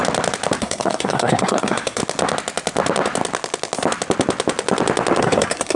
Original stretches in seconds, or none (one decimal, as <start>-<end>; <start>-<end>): 0.0-0.6; 2.0-5.2